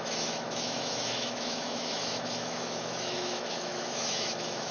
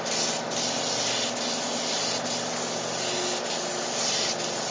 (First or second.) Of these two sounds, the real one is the second